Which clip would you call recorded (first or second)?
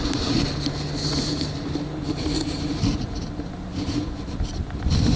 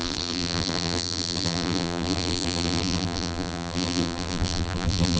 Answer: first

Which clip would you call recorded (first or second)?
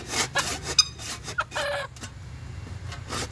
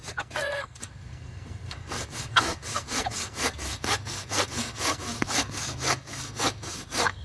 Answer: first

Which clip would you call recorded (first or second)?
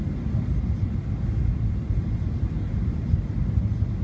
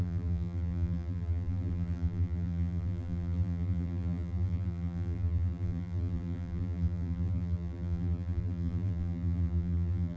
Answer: first